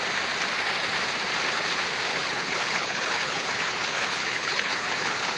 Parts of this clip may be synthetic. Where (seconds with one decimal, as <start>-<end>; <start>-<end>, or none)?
2.1-5.4